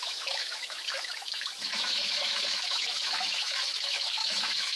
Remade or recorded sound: remade